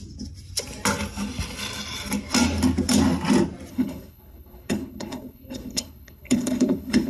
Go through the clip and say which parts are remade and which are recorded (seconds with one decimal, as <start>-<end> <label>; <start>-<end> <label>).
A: 0.0-3.7 recorded; 3.7-7.1 remade